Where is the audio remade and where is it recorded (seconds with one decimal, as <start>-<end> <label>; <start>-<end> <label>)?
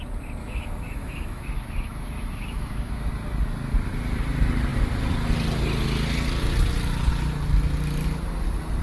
0.0-0.4 recorded; 0.4-3.1 remade; 3.1-8.8 recorded